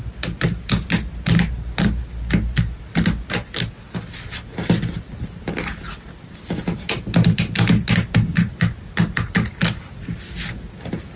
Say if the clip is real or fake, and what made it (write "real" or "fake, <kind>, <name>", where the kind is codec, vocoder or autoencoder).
real